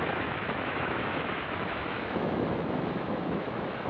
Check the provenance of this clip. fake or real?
fake